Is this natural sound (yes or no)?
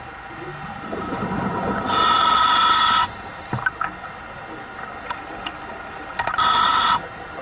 yes